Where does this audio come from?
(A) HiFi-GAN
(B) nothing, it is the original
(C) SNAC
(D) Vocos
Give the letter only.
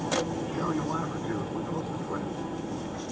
B